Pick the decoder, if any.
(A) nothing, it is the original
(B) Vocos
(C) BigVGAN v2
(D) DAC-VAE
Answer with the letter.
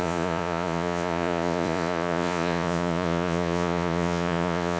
B